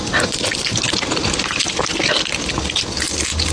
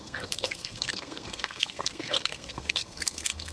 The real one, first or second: first